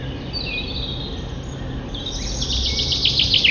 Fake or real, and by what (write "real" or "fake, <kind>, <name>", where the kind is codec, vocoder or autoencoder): real